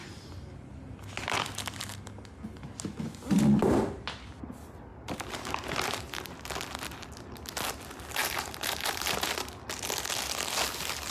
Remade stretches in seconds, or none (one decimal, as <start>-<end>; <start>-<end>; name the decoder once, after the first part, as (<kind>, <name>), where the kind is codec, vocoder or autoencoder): 4.9-6.3 (vocoder, BigVGAN v2); 8.2-9.3